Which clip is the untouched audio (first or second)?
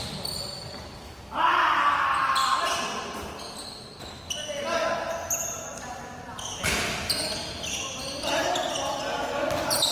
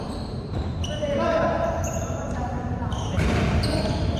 first